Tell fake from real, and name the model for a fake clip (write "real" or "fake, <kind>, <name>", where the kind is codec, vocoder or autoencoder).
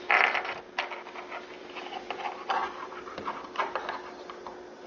real